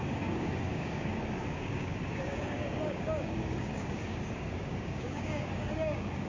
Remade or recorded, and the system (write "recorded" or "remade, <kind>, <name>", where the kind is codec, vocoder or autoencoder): remade, codec, DAC